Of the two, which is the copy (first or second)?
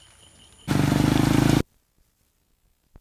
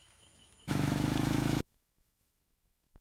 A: second